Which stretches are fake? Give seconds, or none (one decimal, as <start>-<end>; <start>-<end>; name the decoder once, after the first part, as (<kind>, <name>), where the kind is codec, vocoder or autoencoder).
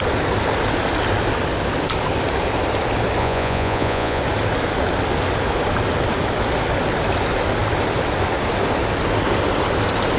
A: 3.2-4.2 (vocoder, Vocos)